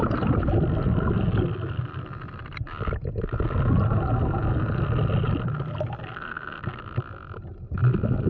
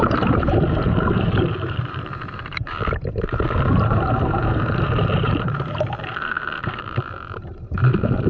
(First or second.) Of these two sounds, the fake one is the second